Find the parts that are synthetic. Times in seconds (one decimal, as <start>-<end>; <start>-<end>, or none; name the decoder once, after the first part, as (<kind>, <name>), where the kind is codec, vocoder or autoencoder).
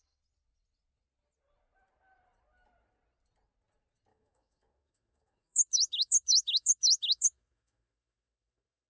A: 4.1-8.9 (autoencoder, DAC-VAE)